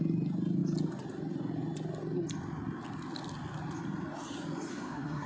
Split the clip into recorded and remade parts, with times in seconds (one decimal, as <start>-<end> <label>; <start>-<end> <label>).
0.0-4.7 recorded; 4.7-5.3 remade